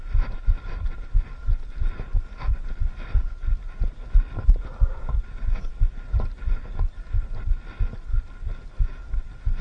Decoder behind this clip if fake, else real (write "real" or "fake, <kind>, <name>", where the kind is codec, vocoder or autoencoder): real